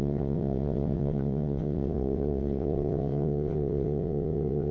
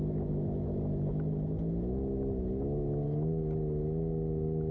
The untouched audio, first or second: second